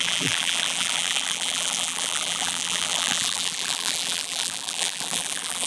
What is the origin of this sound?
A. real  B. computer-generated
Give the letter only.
B